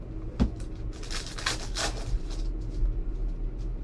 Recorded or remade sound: recorded